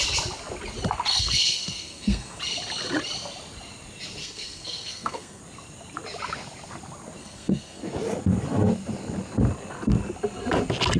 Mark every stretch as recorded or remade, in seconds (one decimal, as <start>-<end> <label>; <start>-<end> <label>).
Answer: 0.0-1.1 recorded; 1.1-2.4 remade; 2.4-4.2 recorded; 4.2-5.4 remade; 5.4-7.2 recorded; 7.2-7.8 remade; 7.8-11.0 recorded